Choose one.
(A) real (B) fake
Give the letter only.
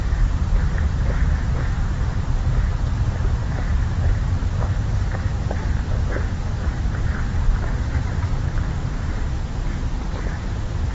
B